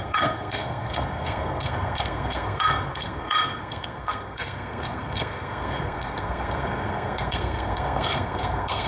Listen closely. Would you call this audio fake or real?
fake